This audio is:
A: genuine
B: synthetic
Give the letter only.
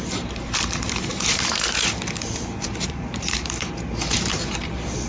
B